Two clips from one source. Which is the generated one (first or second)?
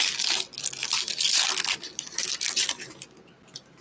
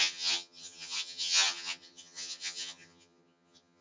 second